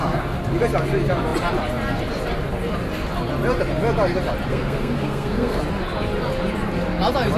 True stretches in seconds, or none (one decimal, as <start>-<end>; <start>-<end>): 0.0-4.5; 5.6-7.4